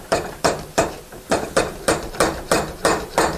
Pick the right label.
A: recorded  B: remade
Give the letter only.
A